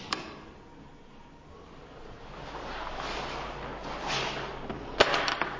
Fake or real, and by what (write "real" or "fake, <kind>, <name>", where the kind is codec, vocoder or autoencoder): real